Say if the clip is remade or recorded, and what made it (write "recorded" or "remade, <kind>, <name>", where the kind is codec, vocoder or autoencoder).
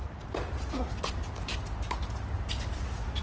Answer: recorded